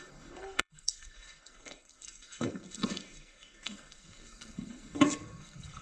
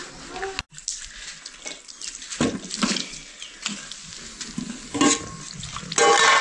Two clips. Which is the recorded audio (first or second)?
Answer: second